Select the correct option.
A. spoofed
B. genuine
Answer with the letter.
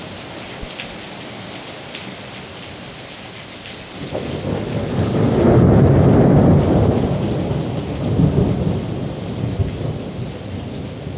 B